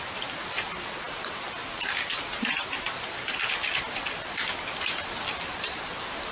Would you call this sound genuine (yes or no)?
yes